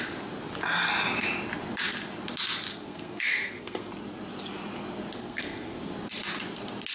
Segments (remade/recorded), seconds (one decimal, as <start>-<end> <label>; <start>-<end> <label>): 0.0-2.7 recorded; 2.7-3.9 remade; 3.9-5.2 recorded; 5.2-5.9 remade; 5.9-6.9 recorded